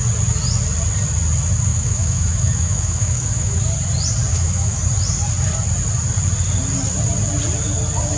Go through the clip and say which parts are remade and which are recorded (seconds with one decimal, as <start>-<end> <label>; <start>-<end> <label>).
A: 0.0-1.7 recorded; 1.7-3.6 remade; 3.6-4.3 recorded; 4.3-4.8 remade; 4.8-8.2 recorded